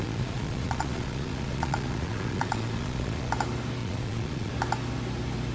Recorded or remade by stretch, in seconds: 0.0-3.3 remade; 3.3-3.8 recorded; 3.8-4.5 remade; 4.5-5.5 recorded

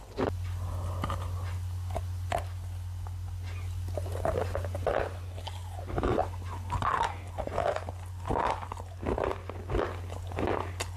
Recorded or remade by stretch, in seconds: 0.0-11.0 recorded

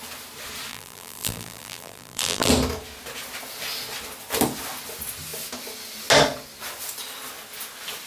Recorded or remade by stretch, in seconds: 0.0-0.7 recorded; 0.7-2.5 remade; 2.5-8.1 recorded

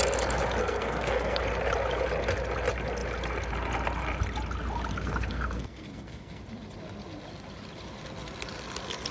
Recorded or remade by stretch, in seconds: 0.0-0.6 recorded; 0.6-1.4 remade; 1.4-4.9 recorded; 4.9-6.4 remade; 6.4-9.1 recorded

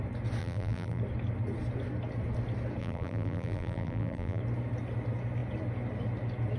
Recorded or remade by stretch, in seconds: 0.0-0.4 recorded; 0.4-1.0 remade; 1.0-2.8 recorded; 2.8-4.4 remade; 4.4-6.6 recorded

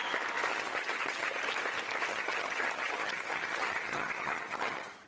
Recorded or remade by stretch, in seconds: 0.0-0.5 recorded; 0.5-1.4 remade; 1.4-2.1 recorded; 2.1-5.1 remade